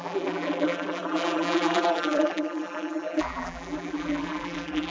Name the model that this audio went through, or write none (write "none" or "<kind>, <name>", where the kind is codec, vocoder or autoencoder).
vocoder, BigVGAN v2